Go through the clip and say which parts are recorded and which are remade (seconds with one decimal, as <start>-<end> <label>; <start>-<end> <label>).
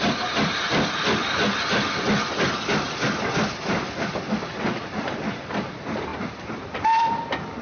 0.0-7.6 recorded